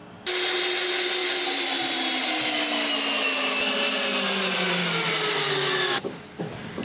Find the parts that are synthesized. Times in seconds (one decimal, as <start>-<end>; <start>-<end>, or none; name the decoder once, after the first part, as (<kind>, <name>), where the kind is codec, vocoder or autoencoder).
none